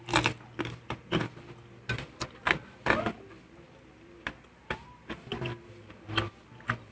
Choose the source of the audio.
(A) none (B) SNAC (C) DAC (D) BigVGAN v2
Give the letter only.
A